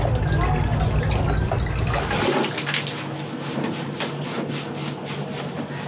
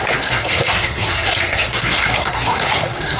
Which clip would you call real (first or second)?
first